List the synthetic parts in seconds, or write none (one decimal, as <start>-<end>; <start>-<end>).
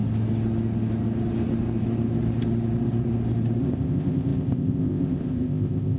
3.6-6.0